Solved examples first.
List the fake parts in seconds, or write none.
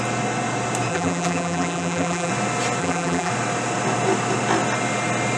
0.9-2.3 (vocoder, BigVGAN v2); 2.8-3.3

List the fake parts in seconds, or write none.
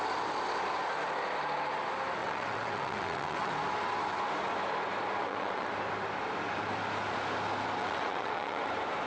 2.2-3.5 (vocoder, WaveNeXt); 5.2-5.7; 7.8-8.7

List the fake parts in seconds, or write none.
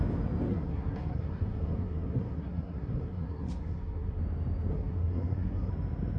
0.5-4.2 (codec, SNAC); 4.7-5.7